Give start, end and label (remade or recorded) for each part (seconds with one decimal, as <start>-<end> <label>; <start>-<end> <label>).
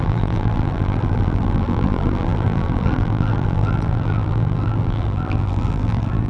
0.0-6.3 remade